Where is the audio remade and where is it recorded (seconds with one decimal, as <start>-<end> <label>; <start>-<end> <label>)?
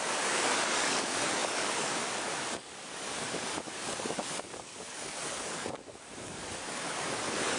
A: 0.0-7.6 remade